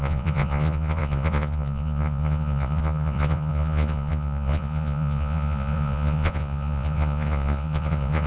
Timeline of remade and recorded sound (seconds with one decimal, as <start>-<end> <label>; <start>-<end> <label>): 0.0-8.3 remade